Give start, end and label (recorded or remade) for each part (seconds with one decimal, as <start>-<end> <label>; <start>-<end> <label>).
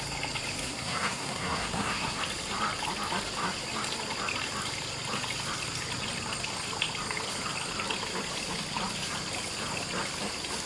0.0-0.6 recorded; 0.6-2.2 remade; 2.2-10.7 recorded